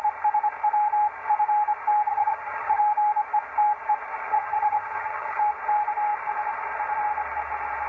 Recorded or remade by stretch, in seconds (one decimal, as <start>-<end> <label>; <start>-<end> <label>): 0.0-2.1 recorded; 2.1-2.8 remade; 2.8-4.3 recorded; 4.3-5.4 remade; 5.4-7.9 recorded